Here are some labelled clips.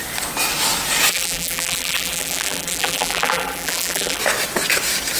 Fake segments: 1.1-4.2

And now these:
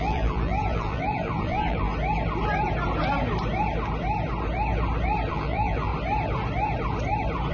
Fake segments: 0.0-1.9; 5.3-5.9

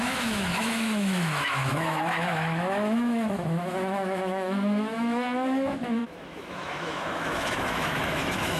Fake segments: 0.0-8.6

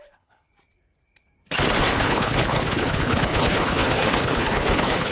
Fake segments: 0.0-0.5; 1.8-5.1

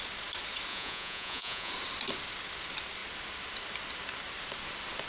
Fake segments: 0.7-1.7

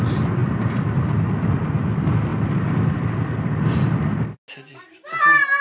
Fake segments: none